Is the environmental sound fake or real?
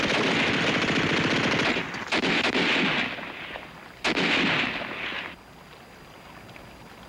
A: real